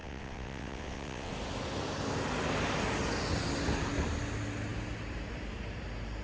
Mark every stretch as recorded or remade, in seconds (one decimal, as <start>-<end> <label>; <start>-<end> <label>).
0.0-1.3 remade; 1.3-6.2 recorded